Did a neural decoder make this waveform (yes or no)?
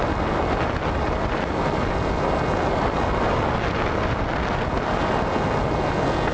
no